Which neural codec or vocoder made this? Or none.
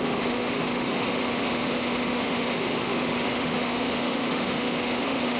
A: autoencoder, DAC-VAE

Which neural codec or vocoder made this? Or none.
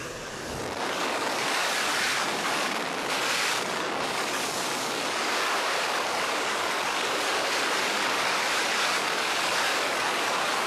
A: codec, DAC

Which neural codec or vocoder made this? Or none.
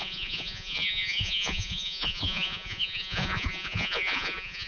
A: vocoder, Vocos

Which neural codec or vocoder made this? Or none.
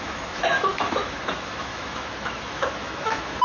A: autoencoder, DAC-VAE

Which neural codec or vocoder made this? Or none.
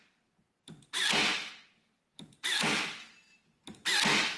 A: none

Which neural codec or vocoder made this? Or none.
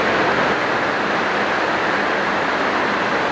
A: none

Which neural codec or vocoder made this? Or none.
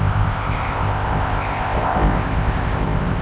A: codec, ZipCodec